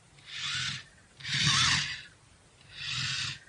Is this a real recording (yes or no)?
yes